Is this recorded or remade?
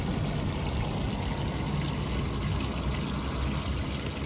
recorded